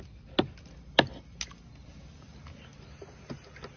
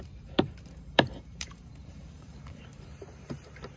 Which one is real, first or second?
first